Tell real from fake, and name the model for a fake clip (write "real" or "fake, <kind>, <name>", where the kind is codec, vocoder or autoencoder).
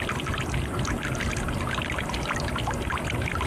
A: real